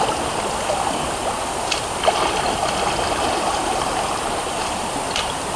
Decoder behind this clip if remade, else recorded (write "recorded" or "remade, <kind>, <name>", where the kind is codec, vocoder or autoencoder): recorded